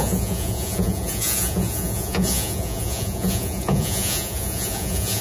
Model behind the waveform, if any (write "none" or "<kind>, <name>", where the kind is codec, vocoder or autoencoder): vocoder, Vocos